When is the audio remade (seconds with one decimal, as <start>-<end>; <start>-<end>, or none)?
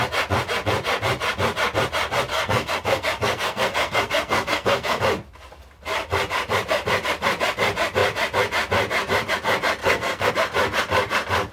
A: 2.3-5.0; 9.8-10.3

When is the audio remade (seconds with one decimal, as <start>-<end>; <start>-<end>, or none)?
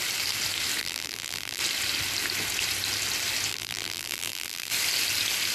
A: 0.8-1.6; 3.5-4.7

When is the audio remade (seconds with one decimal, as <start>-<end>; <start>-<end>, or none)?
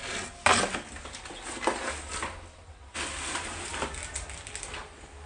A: none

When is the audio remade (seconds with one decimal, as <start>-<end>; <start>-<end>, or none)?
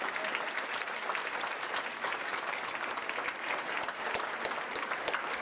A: 1.9-2.7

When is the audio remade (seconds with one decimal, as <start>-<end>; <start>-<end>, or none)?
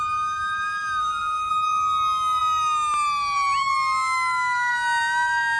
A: 1.0-1.5